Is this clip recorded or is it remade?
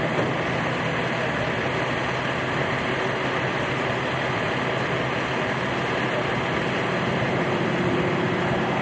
recorded